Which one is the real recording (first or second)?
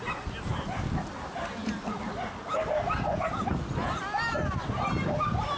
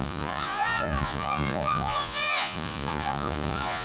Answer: first